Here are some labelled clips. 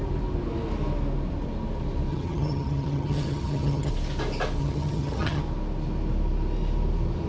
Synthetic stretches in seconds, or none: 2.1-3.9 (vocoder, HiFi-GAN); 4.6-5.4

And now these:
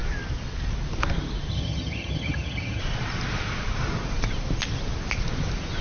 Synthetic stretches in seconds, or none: 1.5-2.8 (vocoder, HiFi-GAN)

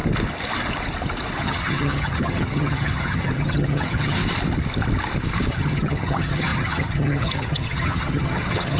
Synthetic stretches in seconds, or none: 1.4-4.2 (vocoder, HiFi-GAN); 5.5-8.8

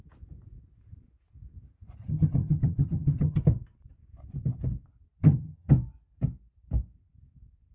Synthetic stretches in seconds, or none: 2.0-3.4 (vocoder, HiFi-GAN); 5.2-5.7

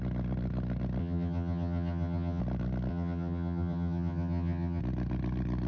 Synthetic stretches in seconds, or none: 1.0-2.4 (vocoder, HiFi-GAN); 2.9-4.8

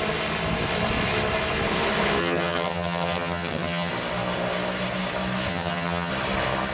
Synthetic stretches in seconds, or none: 2.2-3.9 (vocoder, HiFi-GAN); 5.5-6.1